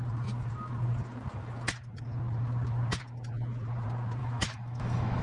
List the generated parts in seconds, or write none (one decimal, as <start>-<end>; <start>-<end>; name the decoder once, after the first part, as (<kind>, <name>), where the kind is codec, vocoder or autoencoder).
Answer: 4.2-5.2 (autoencoder, DAC-VAE)